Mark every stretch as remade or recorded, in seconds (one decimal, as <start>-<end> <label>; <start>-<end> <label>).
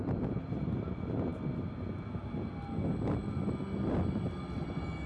0.0-5.1 recorded